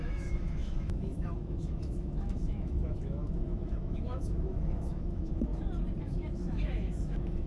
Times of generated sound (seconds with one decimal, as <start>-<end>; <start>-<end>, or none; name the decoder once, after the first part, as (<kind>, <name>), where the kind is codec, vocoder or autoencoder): 0.0-5.5 (autoencoder, DAC-VAE); 6.0-7.5